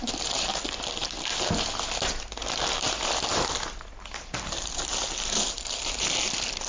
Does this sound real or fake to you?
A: real